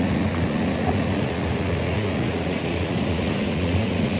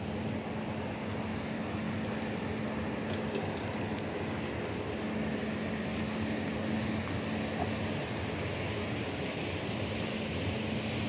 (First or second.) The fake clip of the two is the first